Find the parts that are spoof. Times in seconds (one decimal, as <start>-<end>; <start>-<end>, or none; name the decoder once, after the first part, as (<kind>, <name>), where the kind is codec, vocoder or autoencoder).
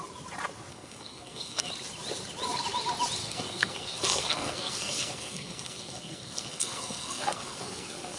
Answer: 0.7-1.7 (codec, SNAC); 3.2-8.2